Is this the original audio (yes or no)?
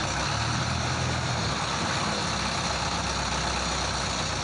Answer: yes